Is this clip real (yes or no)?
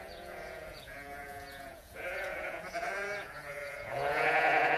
no